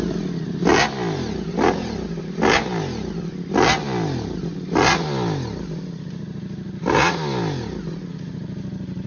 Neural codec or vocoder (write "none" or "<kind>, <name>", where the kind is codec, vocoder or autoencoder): none